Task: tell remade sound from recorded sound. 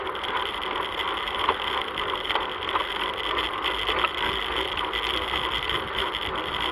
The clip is recorded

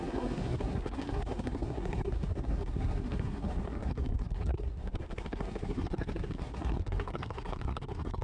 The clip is remade